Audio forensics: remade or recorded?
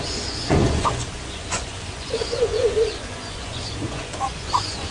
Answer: remade